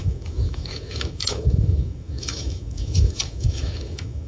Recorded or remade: remade